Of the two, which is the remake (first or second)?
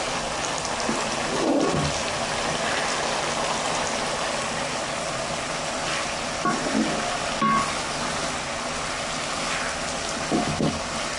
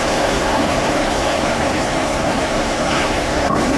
second